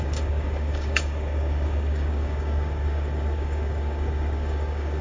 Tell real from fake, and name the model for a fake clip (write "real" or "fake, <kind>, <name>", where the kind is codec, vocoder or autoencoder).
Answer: fake, codec, DAC